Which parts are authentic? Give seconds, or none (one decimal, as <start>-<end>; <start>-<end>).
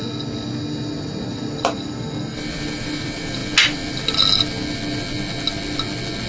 0.0-6.3